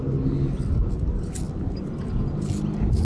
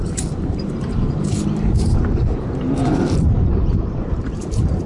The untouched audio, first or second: first